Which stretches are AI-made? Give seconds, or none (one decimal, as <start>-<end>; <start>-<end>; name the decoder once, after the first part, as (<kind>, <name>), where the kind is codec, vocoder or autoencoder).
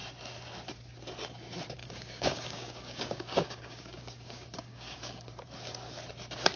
1.8-5.3 (codec, DAC)